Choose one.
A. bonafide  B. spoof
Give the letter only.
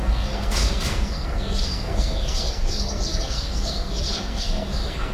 B